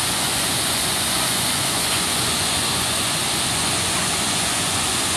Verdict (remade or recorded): remade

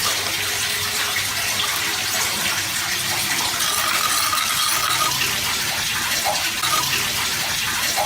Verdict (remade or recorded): recorded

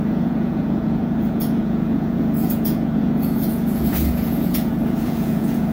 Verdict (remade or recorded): remade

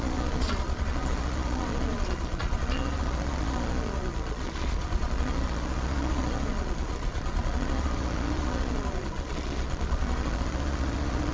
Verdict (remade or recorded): remade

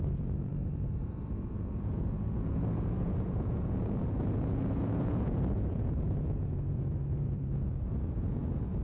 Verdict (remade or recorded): remade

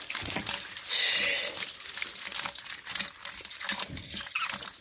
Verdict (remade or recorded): recorded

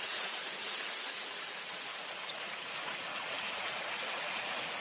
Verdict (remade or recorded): remade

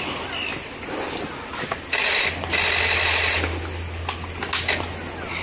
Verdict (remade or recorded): recorded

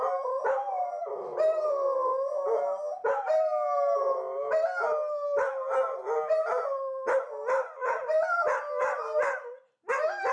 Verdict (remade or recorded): recorded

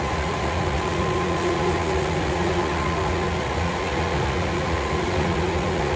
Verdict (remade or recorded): remade